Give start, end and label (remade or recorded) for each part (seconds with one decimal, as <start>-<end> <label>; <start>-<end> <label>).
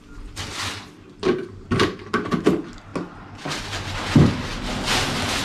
0.0-5.4 recorded